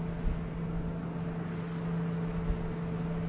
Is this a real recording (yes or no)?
yes